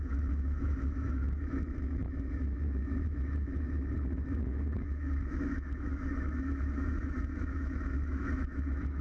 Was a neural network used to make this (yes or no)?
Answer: yes